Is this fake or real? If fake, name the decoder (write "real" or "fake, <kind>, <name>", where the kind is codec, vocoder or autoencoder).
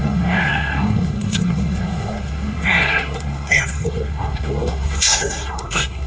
fake, codec, SNAC